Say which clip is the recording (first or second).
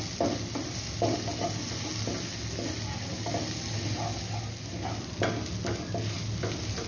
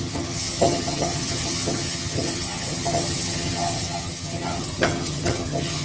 first